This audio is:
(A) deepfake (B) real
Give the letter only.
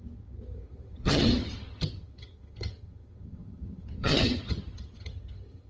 A